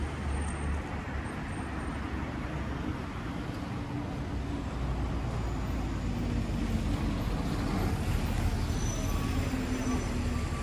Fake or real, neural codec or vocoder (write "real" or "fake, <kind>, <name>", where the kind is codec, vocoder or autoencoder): real